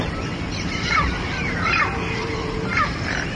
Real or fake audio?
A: fake